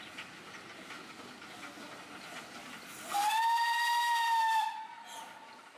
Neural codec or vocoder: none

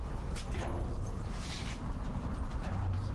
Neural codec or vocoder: vocoder, BigVGAN v2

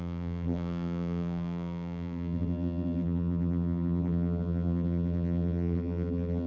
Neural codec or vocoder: vocoder, BigVGAN v2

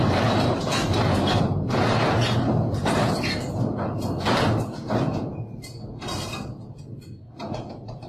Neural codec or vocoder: none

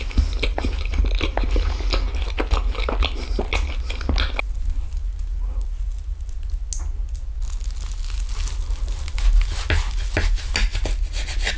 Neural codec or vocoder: none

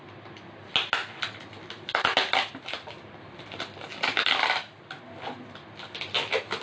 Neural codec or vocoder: none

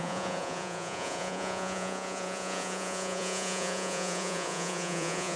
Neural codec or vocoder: vocoder, Vocos